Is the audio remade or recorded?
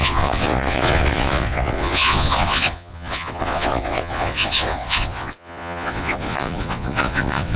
remade